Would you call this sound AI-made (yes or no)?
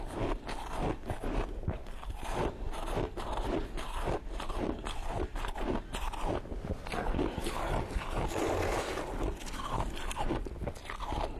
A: no